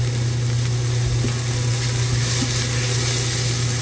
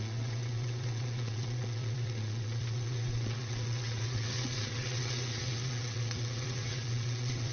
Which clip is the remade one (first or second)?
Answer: second